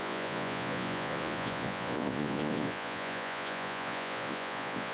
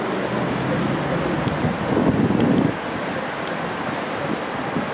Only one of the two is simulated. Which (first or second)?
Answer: first